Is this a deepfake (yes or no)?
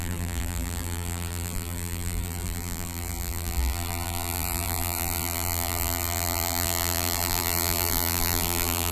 yes